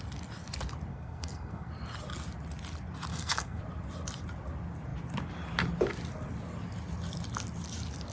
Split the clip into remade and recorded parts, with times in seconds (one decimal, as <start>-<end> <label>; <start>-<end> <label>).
0.0-0.9 recorded; 0.9-1.7 remade; 1.7-3.1 recorded; 3.1-3.6 remade; 3.6-8.1 recorded